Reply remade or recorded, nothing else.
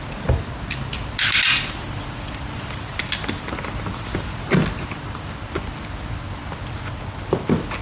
recorded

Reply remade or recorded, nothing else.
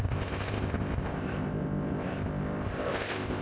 remade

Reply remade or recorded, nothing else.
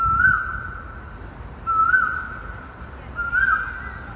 recorded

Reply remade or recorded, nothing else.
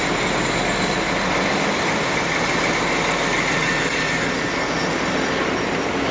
recorded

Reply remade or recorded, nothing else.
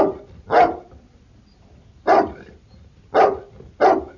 recorded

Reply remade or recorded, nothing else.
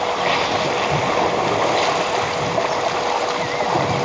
recorded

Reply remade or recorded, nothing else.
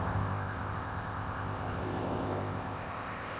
remade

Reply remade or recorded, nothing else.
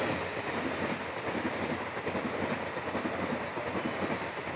recorded